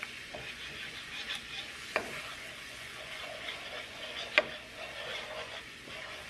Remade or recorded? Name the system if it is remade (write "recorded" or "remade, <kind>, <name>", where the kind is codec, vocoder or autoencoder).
remade, vocoder, Vocos